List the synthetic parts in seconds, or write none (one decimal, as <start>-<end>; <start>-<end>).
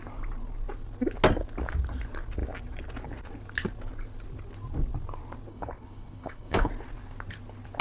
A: 5.5-6.7